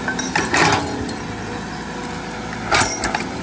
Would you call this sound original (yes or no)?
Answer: yes